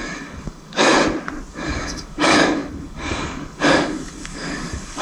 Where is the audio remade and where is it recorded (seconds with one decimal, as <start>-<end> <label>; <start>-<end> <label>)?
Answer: 0.0-0.9 remade; 0.9-1.5 recorded; 1.5-5.0 remade